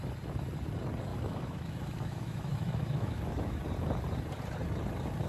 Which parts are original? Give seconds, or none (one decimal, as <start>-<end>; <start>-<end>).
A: 0.0-1.1; 3.6-5.3